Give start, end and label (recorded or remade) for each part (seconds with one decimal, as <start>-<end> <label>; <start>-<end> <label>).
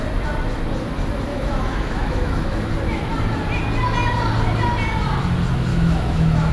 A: 0.0-1.3 recorded; 1.3-2.7 remade; 2.7-5.7 recorded; 5.7-6.5 remade